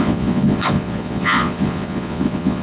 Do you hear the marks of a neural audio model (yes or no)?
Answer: yes